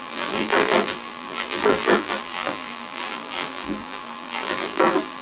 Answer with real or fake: fake